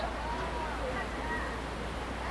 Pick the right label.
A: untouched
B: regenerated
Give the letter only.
A